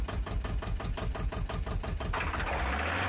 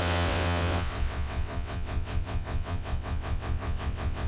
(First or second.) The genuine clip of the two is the first